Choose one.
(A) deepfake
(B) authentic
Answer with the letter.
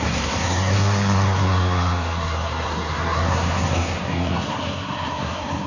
A